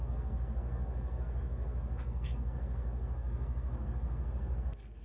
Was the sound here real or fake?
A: fake